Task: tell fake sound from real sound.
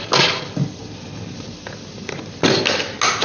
real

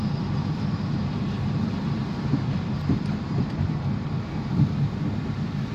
fake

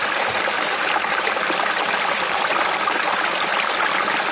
real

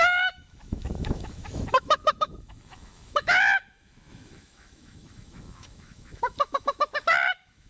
fake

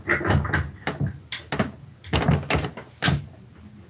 real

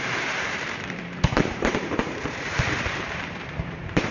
fake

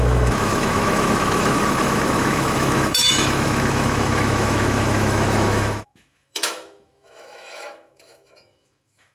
fake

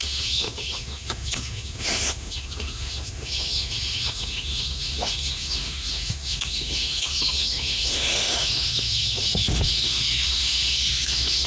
fake